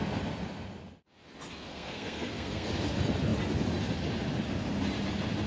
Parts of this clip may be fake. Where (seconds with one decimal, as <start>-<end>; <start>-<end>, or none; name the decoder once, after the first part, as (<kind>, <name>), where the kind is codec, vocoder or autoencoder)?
1.7-2.7 (codec, SNAC)